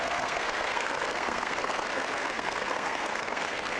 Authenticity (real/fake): fake